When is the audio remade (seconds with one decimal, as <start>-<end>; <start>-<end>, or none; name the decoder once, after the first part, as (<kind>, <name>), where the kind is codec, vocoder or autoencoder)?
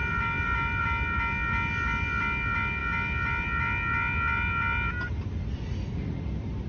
none